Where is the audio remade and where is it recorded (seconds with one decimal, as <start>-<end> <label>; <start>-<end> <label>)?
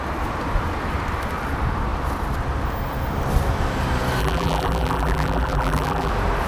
0.0-4.2 recorded; 4.2-6.1 remade; 6.1-6.5 recorded